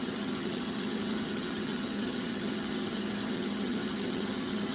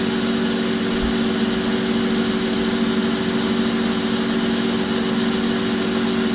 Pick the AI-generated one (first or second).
first